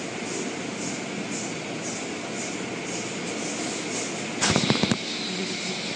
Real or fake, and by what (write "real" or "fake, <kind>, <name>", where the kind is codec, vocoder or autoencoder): real